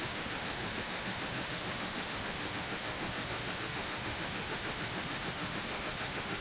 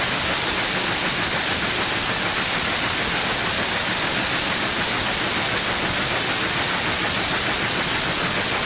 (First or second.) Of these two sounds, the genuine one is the second